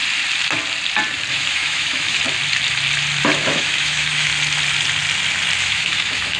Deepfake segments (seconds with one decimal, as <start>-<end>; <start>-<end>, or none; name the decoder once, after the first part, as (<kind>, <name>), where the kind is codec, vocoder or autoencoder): 1.3-2.2 (autoencoder, DAC-VAE); 3.2-4.3; 5.6-6.4